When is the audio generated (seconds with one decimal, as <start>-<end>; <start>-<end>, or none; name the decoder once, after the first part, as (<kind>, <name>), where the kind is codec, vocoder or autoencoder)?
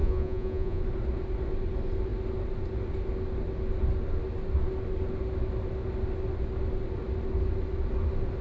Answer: 0.0-0.8 (vocoder, Vocos)